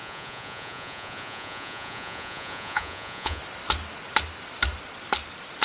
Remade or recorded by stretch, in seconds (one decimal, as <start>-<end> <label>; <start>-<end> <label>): 0.0-3.4 remade; 3.4-5.6 recorded